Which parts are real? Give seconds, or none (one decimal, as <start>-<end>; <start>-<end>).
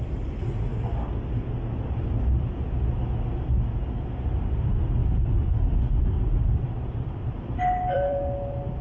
0.7-4.3